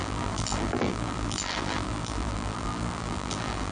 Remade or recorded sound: remade